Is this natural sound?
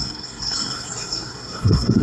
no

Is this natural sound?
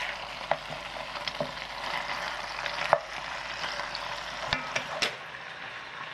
no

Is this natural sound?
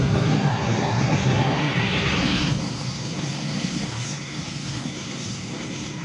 no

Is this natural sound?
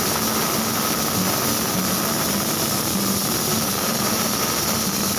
no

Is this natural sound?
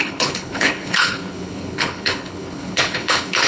no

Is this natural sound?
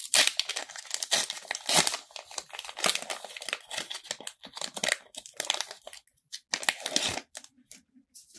yes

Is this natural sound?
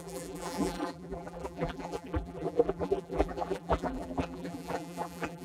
no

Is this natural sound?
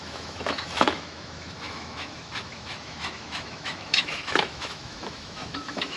no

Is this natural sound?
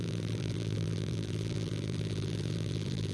no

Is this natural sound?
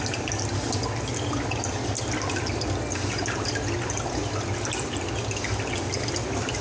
yes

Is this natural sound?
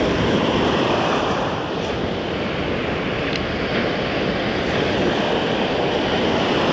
yes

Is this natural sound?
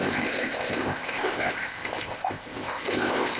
no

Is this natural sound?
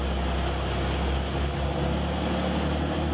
yes